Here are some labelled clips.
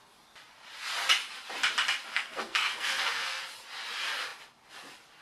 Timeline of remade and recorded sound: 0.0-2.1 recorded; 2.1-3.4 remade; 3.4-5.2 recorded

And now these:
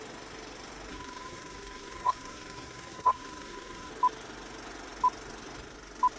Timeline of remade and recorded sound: 0.0-0.9 recorded; 0.9-3.9 remade; 3.9-6.2 recorded

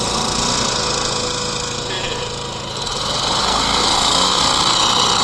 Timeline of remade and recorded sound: 0.0-3.4 recorded; 3.4-4.4 remade; 4.4-5.2 recorded

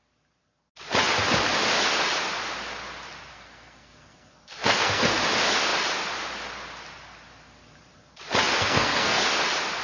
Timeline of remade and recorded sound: 0.0-3.3 recorded; 3.3-5.2 remade; 5.2-8.5 recorded; 8.5-9.2 remade; 9.2-9.8 recorded

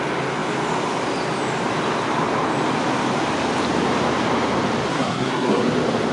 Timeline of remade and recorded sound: 0.0-4.9 recorded; 4.9-5.6 remade; 5.6-6.1 recorded

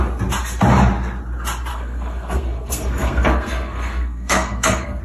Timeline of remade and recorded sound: 0.0-1.7 recorded; 1.7-5.0 remade

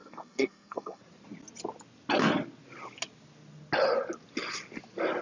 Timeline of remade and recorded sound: 0.0-1.0 remade; 1.0-5.2 recorded